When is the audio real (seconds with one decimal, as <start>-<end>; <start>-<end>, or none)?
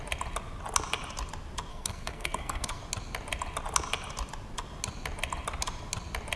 0.0-1.7; 2.8-6.4